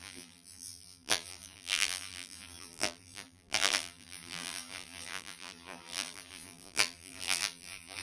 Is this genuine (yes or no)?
no